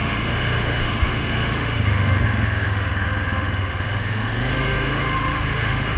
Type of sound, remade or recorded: remade